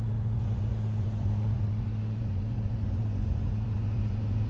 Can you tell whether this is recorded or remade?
remade